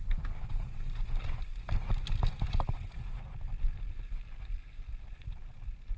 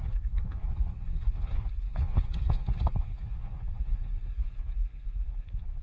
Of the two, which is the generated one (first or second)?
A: second